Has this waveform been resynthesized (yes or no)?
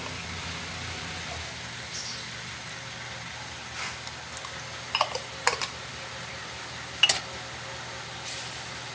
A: no